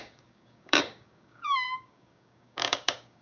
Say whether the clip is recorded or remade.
remade